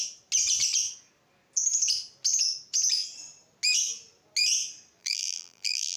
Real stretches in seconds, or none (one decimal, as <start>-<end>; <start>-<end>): 0.0-5.0